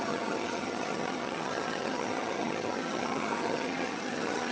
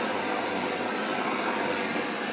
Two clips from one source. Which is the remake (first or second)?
first